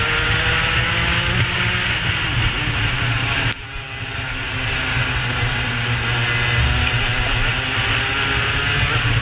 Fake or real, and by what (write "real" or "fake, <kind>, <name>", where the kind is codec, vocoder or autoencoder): real